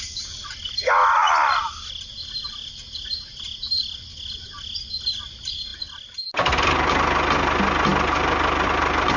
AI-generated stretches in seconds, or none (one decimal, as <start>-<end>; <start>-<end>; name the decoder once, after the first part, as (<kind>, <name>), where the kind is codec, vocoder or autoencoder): 0.4-1.6 (vocoder, BigVGAN v2)